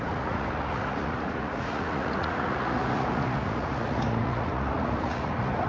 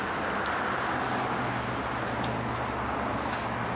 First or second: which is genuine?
second